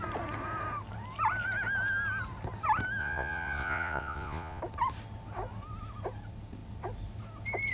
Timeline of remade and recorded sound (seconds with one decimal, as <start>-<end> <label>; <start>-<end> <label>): 0.0-3.0 recorded; 3.0-4.6 remade; 4.6-7.7 recorded